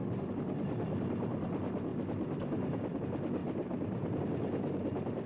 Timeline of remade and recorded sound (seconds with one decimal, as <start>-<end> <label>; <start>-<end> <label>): 0.0-3.4 recorded; 3.4-4.2 remade; 4.2-5.3 recorded